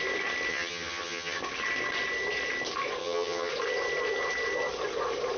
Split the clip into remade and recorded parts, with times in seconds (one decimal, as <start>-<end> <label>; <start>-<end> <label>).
0.0-0.5 recorded; 0.5-1.4 remade; 1.4-3.0 recorded; 3.0-3.5 remade; 3.5-5.4 recorded

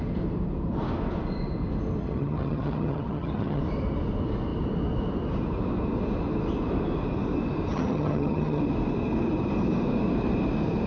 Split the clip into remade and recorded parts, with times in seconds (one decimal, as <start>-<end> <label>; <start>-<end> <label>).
0.0-2.0 recorded; 2.0-3.6 remade; 3.6-7.7 recorded; 7.7-8.6 remade; 8.6-10.9 recorded